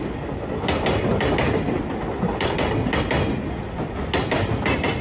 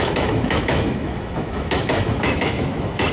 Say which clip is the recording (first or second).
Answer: first